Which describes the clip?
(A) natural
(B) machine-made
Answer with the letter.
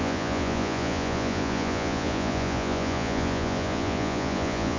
B